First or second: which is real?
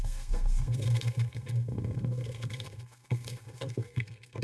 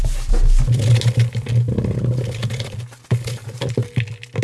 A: second